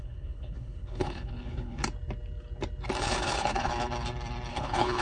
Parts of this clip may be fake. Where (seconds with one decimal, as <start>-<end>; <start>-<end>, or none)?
0.0-1.8; 3.0-3.7; 4.5-5.0